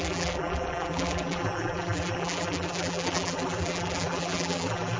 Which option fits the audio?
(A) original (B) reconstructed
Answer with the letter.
B